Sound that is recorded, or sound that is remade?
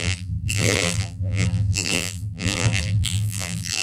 remade